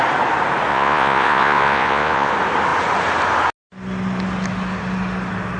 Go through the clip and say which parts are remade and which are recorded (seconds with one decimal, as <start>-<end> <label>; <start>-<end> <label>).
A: 0.0-0.7 recorded; 0.7-2.3 remade; 2.3-5.6 recorded

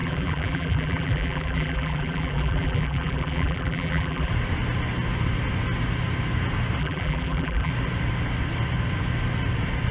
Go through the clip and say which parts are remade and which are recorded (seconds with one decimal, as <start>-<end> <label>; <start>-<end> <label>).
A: 0.0-4.3 remade; 4.3-6.8 recorded; 6.8-7.7 remade; 7.7-9.9 recorded

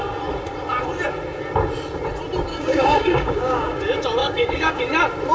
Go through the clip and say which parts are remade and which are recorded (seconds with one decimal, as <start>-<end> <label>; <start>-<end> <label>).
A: 0.0-2.5 recorded; 2.5-3.8 remade; 3.8-4.2 recorded; 4.2-4.8 remade; 4.8-5.3 recorded

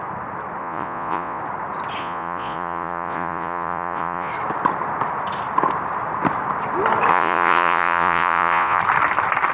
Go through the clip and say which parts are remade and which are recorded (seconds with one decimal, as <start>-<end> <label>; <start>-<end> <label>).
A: 0.0-0.6 recorded; 0.6-1.4 remade; 1.4-2.0 recorded; 2.0-4.3 remade; 4.3-7.1 recorded; 7.1-8.8 remade; 8.8-9.5 recorded

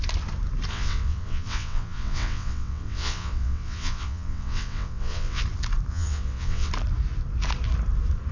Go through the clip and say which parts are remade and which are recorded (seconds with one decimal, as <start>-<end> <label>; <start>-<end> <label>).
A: 0.0-0.7 recorded; 0.7-5.4 remade; 5.4-5.9 recorded; 5.9-6.7 remade; 6.7-8.3 recorded